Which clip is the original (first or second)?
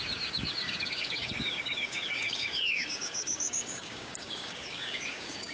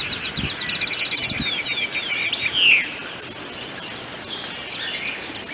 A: second